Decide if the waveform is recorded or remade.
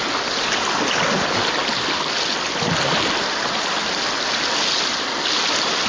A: recorded